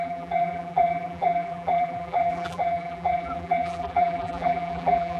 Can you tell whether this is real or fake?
fake